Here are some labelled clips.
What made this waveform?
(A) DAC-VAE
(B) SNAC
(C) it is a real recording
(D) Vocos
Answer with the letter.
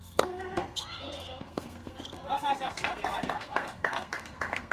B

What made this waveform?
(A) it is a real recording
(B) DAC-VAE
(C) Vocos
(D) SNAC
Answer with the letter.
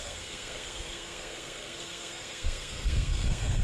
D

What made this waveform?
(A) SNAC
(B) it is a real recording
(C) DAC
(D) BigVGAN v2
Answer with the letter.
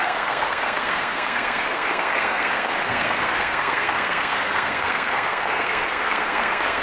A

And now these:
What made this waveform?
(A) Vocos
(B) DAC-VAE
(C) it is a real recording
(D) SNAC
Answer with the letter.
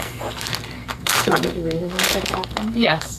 D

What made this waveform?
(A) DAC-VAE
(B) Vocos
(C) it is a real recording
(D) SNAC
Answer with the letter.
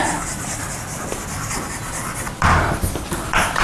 C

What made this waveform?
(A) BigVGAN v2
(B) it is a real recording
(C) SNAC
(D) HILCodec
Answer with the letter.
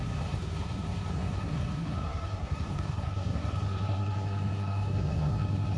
C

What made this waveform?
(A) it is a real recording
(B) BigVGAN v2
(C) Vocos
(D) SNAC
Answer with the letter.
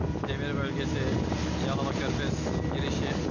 A